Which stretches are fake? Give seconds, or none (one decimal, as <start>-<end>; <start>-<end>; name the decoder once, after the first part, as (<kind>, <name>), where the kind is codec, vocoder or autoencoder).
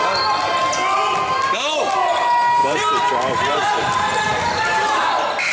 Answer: 2.6-5.1 (vocoder, BigVGAN v2)